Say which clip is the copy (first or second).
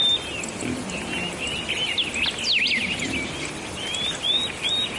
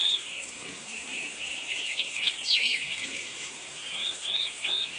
second